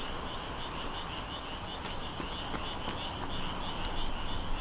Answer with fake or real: real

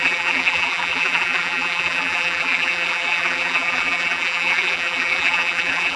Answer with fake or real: fake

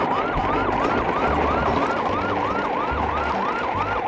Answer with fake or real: real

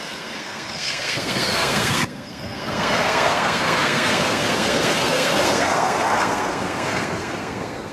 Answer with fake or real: fake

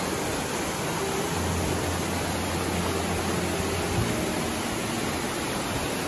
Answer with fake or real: real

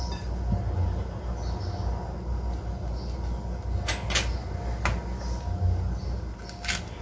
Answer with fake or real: real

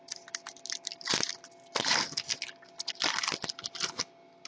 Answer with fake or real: real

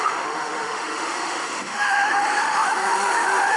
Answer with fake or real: fake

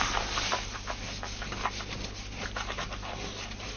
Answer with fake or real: real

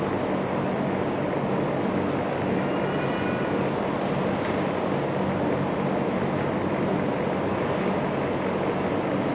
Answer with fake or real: real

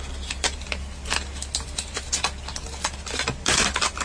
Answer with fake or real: real